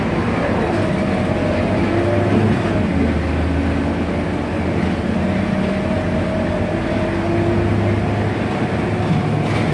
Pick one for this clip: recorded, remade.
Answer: recorded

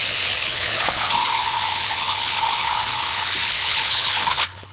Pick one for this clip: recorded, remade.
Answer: remade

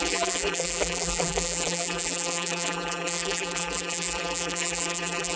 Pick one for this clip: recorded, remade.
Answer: remade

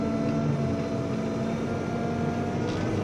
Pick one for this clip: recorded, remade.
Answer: recorded